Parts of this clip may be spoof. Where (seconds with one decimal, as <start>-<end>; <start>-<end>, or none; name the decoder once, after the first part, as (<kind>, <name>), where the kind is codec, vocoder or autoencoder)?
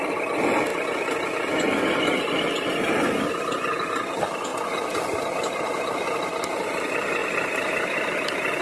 4.5-6.8 (vocoder, BigVGAN v2); 7.2-7.7